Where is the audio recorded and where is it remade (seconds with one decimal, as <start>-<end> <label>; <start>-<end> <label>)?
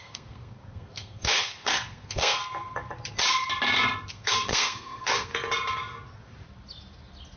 0.0-2.4 remade; 2.4-4.1 recorded; 4.1-5.3 remade; 5.3-7.4 recorded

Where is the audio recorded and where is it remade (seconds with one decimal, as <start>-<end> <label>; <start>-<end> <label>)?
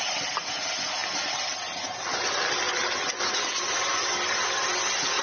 0.0-5.2 recorded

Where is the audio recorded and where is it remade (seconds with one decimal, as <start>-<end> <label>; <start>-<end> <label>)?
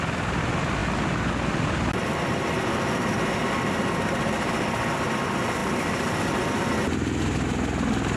0.0-8.2 recorded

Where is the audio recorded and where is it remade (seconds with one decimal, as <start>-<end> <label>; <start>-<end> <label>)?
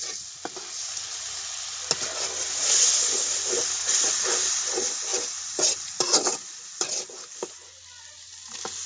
0.0-8.9 recorded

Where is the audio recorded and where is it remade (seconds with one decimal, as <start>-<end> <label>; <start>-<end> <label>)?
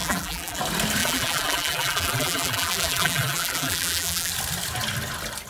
0.0-0.6 remade; 0.6-1.0 recorded; 1.0-4.3 remade; 4.3-5.5 recorded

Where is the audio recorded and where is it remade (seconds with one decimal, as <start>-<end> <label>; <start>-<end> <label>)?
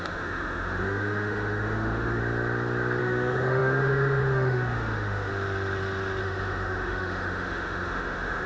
0.0-2.2 remade; 2.2-3.0 recorded; 3.0-5.3 remade; 5.3-6.2 recorded; 6.2-8.5 remade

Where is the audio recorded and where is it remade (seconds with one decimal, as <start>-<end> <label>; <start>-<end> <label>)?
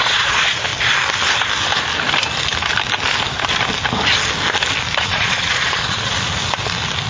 0.0-0.7 remade; 0.7-5.0 recorded; 5.0-6.4 remade; 6.4-7.1 recorded